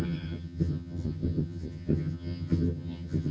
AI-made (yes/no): yes